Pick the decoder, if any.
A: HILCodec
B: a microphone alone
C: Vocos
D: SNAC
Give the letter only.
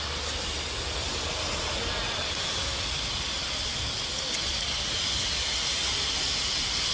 B